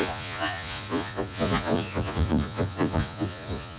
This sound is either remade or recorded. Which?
remade